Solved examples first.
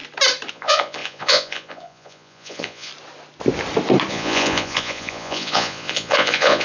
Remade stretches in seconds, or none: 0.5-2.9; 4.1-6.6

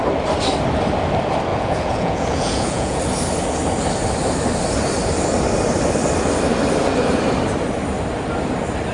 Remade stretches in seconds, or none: 1.5-3.0

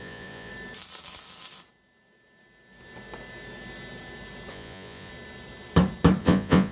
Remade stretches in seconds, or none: 0.0-0.5; 4.5-5.1; 6.2-6.7

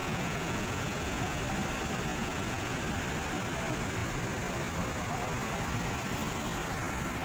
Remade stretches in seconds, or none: 0.0-1.4; 2.1-2.8

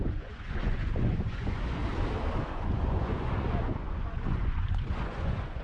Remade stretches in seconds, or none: 0.0-1.8; 2.4-5.6

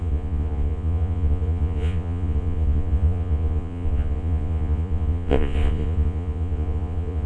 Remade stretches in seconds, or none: 0.0-7.3

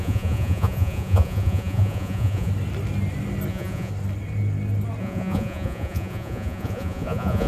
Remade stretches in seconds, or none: 0.0-2.5; 3.5-3.9; 5.0-7.5